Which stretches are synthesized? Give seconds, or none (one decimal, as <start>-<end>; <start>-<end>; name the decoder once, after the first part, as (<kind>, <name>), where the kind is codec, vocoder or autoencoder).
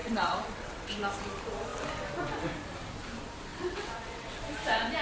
0.0-0.9 (vocoder, WaveNeXt); 3.5-4.4